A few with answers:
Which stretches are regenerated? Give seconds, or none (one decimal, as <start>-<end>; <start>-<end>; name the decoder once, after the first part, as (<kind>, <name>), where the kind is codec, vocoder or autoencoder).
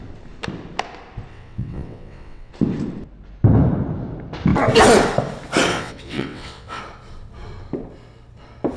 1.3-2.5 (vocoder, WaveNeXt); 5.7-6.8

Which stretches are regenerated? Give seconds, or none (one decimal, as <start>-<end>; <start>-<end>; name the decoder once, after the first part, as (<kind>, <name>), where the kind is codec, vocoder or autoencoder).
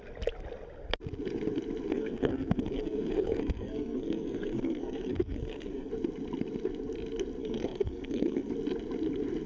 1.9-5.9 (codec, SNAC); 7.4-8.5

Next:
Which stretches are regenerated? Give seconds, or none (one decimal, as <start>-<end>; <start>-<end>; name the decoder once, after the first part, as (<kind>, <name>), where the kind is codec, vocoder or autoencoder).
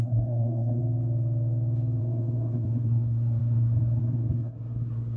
0.0-0.8 (codec, SNAC); 2.0-5.2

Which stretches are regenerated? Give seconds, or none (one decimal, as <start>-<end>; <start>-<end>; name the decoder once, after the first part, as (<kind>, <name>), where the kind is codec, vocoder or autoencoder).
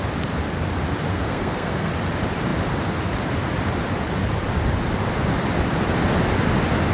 1.1-1.9 (codec, SNAC)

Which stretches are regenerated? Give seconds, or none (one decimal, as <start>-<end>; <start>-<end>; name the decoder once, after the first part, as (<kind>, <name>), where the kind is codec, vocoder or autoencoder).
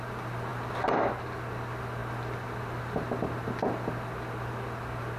none